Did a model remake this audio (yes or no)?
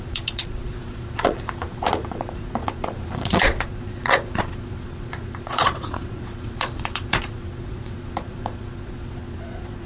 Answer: yes